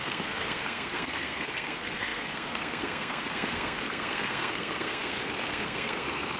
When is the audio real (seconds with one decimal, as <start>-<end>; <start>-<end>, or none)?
none